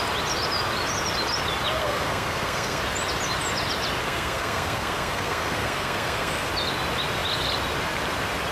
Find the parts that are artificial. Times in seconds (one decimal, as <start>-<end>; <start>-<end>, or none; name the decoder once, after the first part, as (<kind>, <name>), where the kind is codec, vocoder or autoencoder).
1.8-2.8 (codec, SNAC); 4.0-6.5